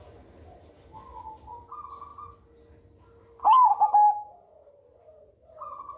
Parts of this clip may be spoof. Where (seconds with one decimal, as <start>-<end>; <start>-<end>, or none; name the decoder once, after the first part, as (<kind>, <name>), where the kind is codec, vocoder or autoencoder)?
none